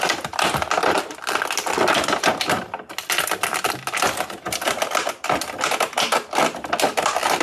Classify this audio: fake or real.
real